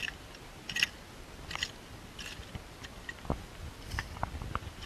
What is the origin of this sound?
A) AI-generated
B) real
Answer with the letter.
B